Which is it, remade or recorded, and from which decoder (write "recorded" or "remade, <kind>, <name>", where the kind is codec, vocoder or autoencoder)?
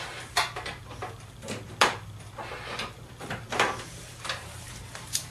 remade, vocoder, BigVGAN v2